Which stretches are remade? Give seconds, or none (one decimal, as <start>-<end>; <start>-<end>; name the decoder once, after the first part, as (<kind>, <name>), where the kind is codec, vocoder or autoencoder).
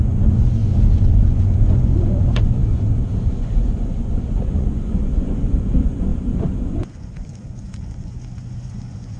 0.0-9.2 (vocoder, Vocos)